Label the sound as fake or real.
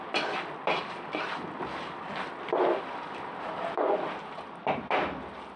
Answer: real